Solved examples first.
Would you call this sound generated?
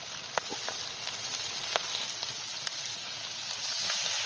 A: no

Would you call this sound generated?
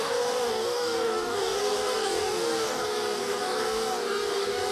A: yes